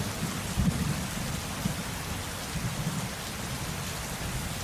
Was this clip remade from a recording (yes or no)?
yes